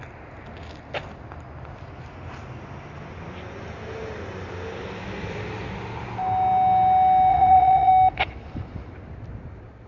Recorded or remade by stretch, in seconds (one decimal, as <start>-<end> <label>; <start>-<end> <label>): 0.0-7.3 recorded; 7.3-7.9 remade; 7.9-9.9 recorded

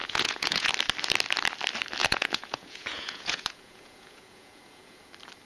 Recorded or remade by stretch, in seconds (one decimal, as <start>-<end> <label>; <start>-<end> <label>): 0.0-0.7 remade; 0.7-2.0 recorded; 2.0-5.1 remade; 5.1-5.5 recorded

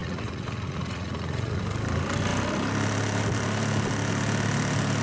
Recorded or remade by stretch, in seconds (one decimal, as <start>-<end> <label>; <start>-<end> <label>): 0.0-1.6 remade; 1.6-5.0 recorded